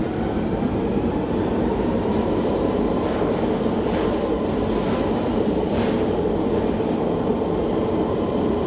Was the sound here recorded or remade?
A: recorded